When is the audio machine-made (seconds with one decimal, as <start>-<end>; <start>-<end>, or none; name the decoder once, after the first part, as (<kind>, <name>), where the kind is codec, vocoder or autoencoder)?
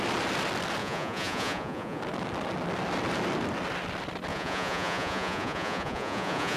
0.8-2.0 (vocoder, Vocos); 4.3-6.6